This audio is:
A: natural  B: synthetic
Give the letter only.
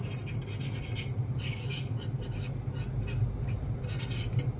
A